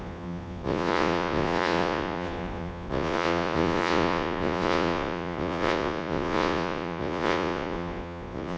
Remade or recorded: remade